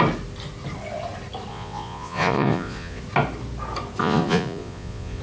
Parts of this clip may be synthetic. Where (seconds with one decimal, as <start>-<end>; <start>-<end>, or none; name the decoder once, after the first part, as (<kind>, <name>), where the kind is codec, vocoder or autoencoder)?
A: 1.5-3.0 (vocoder, Vocos); 4.0-5.2